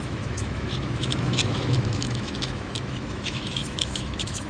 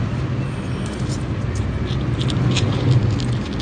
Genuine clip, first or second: second